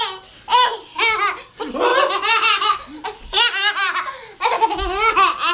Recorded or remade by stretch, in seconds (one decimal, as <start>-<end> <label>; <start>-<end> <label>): 0.0-5.5 recorded